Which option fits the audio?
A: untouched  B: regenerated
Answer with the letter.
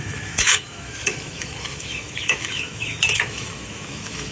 B